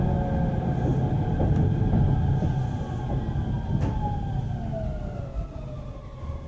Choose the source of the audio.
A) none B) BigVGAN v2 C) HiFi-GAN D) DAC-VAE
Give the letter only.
A